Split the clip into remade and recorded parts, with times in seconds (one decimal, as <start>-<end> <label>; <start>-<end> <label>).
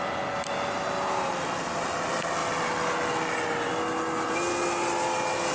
0.0-5.5 recorded